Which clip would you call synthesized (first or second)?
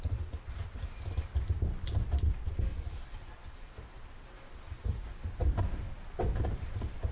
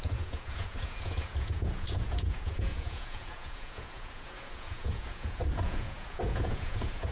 second